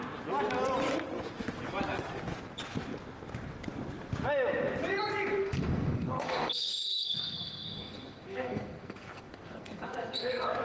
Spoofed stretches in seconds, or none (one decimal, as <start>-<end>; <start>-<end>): 5.4-10.6